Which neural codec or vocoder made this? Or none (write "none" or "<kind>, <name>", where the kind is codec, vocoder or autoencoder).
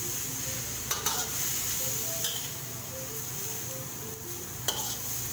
none